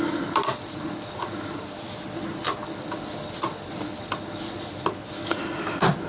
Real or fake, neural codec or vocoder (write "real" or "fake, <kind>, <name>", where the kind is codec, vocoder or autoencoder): real